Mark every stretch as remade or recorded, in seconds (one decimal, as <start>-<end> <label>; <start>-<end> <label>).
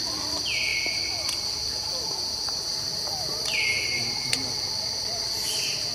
0.0-3.3 recorded; 3.3-4.3 remade; 4.3-5.9 recorded